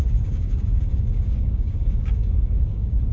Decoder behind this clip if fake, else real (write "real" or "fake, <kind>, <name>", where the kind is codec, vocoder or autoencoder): fake, codec, DAC